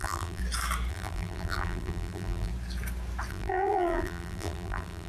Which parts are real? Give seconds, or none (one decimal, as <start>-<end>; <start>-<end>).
0.4-0.9; 2.5-3.3